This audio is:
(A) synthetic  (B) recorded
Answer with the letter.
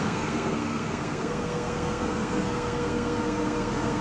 A